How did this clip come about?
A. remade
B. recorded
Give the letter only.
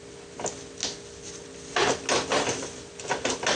B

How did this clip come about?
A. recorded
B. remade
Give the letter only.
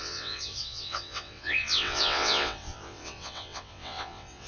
B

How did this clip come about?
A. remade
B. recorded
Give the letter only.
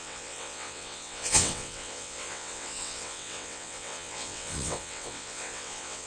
A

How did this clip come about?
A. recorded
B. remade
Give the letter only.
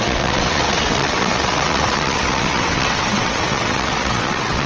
B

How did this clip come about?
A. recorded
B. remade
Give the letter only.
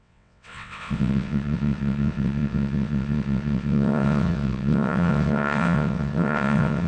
B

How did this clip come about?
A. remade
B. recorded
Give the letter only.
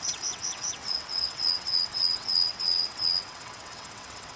A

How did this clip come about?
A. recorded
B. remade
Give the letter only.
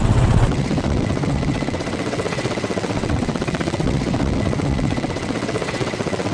B